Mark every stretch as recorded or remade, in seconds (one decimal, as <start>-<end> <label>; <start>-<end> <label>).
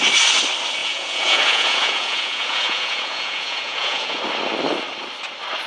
0.0-0.8 recorded; 0.8-4.2 remade; 4.2-5.7 recorded